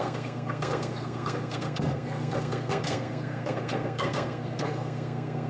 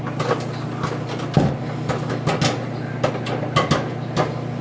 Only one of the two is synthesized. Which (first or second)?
first